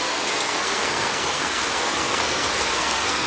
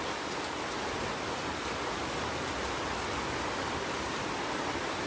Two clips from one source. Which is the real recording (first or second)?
second